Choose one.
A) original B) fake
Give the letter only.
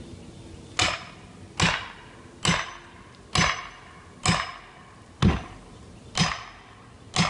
A